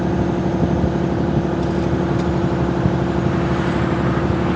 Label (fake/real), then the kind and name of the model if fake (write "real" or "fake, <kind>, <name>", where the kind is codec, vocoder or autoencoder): real